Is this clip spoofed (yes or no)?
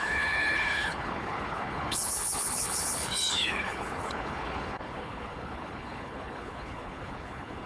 yes